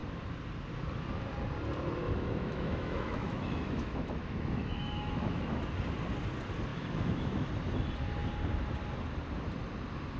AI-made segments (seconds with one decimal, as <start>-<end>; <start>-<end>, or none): 2.0-5.6; 6.7-7.5

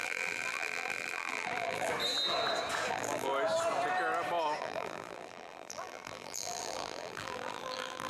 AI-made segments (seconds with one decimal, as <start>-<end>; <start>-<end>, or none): 0.0-1.9; 2.9-3.3; 4.6-8.1

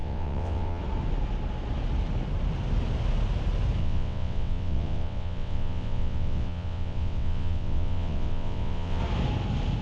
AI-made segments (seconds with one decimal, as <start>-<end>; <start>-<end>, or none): 0.0-0.8; 3.8-9.0

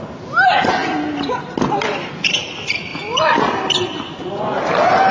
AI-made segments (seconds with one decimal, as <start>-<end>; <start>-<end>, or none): none